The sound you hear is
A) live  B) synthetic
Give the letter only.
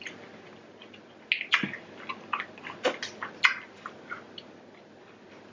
A